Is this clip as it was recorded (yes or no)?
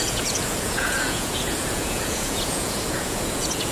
no